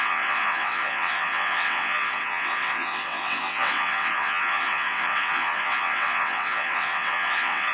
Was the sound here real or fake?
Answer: fake